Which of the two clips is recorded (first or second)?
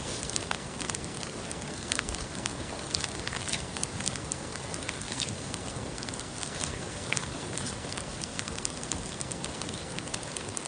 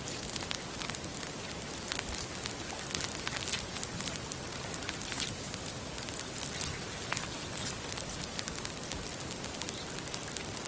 second